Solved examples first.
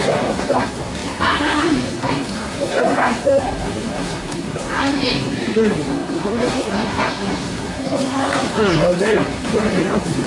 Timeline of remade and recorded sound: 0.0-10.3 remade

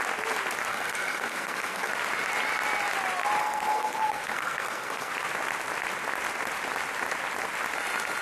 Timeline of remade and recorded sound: 0.0-0.7 recorded; 0.7-1.9 remade; 1.9-3.4 recorded; 3.4-5.1 remade; 5.1-8.2 recorded

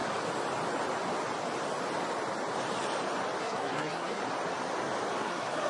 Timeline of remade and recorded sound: 0.0-3.4 recorded; 3.4-4.2 remade; 4.2-5.2 recorded; 5.2-5.7 remade

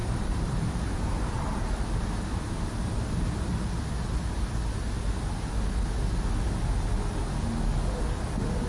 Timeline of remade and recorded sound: 0.0-1.9 remade; 1.9-8.7 recorded

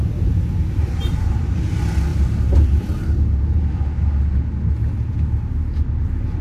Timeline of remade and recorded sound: 0.0-1.6 remade; 1.6-2.1 recorded; 2.1-3.6 remade; 3.6-6.4 recorded